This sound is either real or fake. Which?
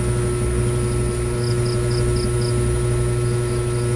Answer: real